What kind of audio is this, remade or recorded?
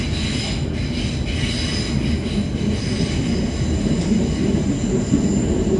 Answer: recorded